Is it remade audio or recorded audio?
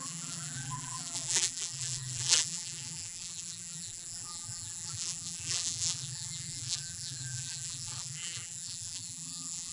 remade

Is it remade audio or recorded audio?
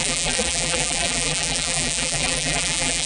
remade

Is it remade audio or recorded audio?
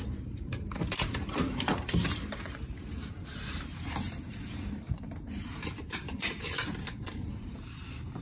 remade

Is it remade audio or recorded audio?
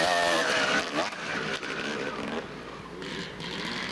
recorded